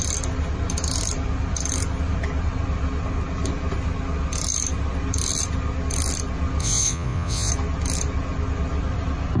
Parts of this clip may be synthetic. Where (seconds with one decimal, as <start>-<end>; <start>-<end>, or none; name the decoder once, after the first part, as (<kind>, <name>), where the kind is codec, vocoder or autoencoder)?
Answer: 6.6-7.5 (vocoder, Vocos)